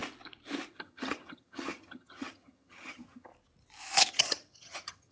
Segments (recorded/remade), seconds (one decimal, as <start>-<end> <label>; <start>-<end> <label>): 0.0-0.7 recorded; 0.7-3.3 remade; 3.3-4.1 recorded; 4.1-5.1 remade

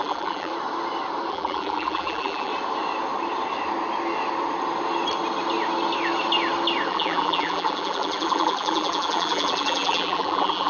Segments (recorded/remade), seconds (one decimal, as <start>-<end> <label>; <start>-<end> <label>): 0.0-0.5 remade; 0.5-1.3 recorded; 1.3-2.5 remade; 2.5-6.9 recorded; 6.9-10.7 remade